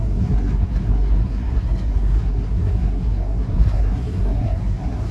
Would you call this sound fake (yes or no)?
yes